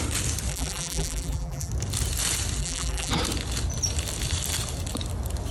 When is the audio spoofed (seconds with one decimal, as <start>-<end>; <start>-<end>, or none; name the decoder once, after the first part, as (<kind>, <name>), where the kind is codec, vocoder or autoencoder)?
0.5-1.7 (vocoder, BigVGAN v2); 2.6-3.1